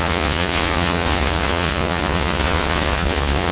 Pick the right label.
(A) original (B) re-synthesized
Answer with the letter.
B